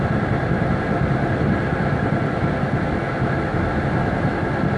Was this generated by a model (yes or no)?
no